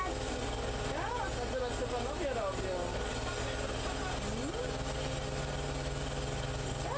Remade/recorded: recorded